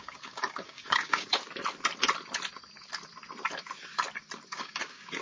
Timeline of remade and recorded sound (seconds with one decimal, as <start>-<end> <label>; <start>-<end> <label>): 0.0-1.4 remade; 1.4-4.5 recorded; 4.5-5.2 remade